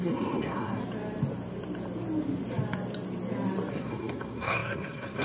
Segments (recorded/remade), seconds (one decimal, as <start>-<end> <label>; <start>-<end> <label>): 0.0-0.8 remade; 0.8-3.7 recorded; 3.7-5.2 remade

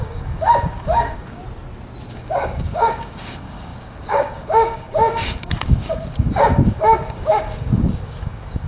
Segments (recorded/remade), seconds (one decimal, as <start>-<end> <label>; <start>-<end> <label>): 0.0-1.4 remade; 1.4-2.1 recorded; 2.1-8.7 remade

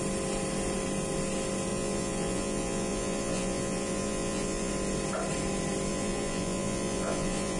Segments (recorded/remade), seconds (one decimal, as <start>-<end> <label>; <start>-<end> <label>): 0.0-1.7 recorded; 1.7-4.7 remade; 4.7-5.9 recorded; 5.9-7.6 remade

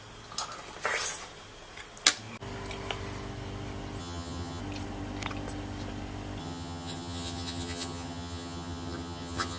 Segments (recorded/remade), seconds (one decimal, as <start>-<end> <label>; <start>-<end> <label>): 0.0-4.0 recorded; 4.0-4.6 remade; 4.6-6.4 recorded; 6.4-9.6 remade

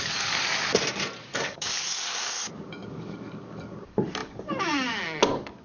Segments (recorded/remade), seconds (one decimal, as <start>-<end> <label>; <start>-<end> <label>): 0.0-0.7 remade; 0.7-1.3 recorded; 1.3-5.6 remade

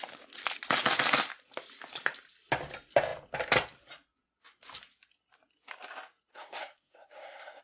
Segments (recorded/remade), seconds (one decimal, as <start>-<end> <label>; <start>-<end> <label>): 0.0-6.3 recorded; 6.3-7.6 remade

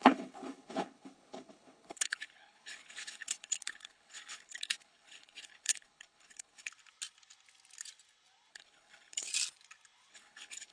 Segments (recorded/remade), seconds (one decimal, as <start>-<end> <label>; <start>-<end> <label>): 0.0-6.7 remade; 6.7-8.5 recorded; 8.5-9.3 remade; 9.3-10.1 recorded; 10.1-10.7 remade

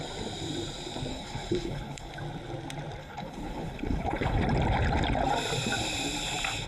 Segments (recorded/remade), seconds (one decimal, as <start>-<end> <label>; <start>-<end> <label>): 0.0-1.1 recorded; 1.1-2.1 remade; 2.1-3.0 recorded; 3.0-4.4 remade; 4.4-6.7 recorded